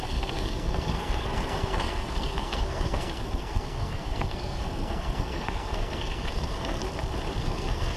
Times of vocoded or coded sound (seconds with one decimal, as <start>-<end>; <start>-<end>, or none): 0.0-6.8; 7.4-8.0